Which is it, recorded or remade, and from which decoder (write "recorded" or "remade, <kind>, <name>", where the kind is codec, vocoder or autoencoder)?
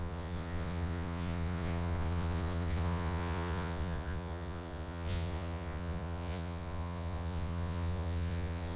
remade, vocoder, Vocos